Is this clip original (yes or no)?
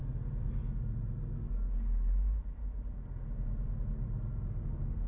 yes